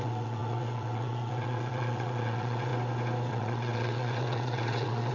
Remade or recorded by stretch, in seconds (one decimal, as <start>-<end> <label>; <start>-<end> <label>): 0.0-2.7 remade; 2.7-3.3 recorded; 3.3-5.1 remade